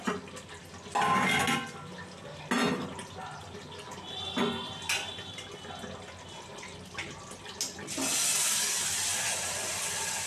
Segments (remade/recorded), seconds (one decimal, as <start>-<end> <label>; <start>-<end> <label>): 0.0-10.3 recorded